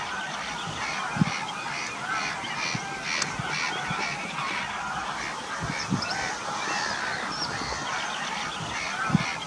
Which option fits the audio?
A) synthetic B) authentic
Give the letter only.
B